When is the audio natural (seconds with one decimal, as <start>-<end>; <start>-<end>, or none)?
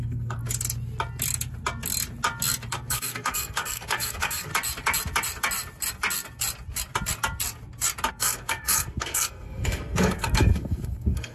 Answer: 0.4-2.7; 4.5-8.1